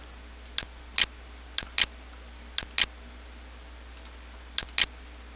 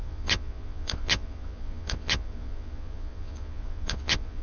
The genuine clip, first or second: first